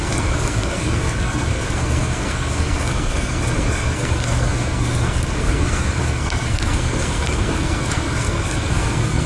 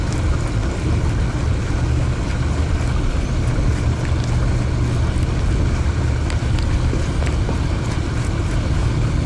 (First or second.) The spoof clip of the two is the first